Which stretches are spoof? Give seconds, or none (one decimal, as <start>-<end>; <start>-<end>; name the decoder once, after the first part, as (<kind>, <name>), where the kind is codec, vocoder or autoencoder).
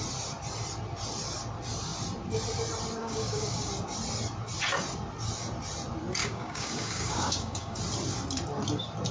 3.0-3.7 (codec, DAC); 6.2-7.8